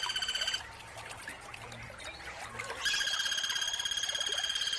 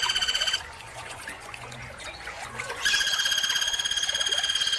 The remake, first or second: second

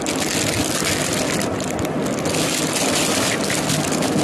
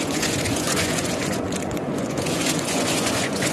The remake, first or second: second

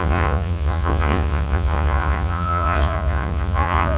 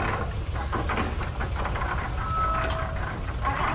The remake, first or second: first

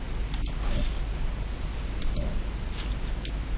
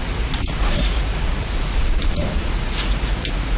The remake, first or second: second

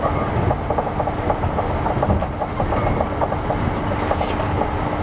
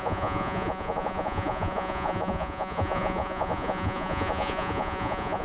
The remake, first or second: second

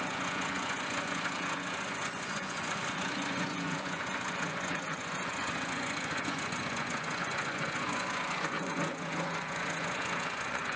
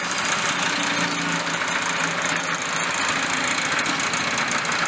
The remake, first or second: first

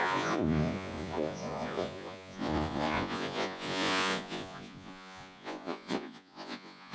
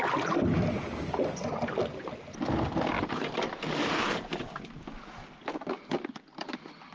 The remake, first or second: first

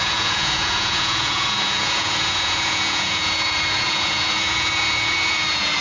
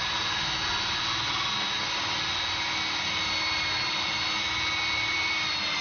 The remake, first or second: first